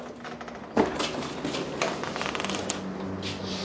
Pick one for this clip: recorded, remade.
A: recorded